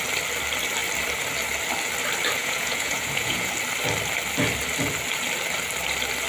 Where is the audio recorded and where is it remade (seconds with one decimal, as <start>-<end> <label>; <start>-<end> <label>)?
0.0-2.4 recorded; 2.4-3.5 remade; 3.5-6.3 recorded